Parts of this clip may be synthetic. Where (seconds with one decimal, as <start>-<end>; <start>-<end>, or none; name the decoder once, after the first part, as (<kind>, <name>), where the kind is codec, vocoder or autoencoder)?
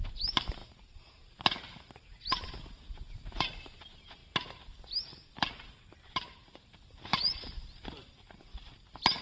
0.0-2.1 (vocoder, BigVGAN v2); 2.9-4.2; 6.3-9.2